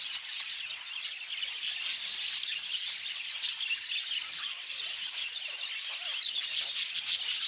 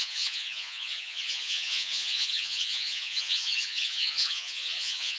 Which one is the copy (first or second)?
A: second